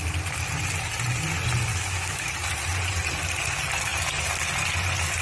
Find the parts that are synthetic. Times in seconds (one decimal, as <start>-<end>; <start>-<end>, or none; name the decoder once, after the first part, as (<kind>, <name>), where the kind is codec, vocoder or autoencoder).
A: 1.7-2.3 (autoencoder, DAC-VAE)